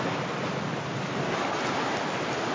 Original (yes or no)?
yes